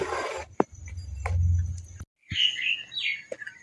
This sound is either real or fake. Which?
real